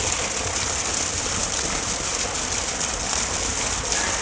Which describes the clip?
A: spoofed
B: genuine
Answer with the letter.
B